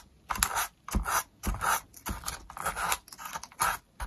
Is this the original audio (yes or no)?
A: yes